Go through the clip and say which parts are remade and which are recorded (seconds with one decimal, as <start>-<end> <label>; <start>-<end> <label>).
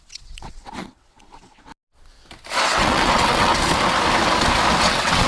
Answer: 0.0-1.7 remade; 1.7-2.6 recorded; 2.6-3.5 remade; 3.5-4.8 recorded; 4.8-5.3 remade